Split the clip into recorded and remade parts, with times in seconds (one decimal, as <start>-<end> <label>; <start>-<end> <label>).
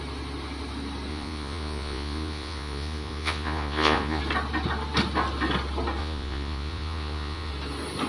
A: 0.0-1.1 recorded; 1.1-4.2 remade; 4.2-6.0 recorded; 6.0-7.5 remade; 7.5-8.1 recorded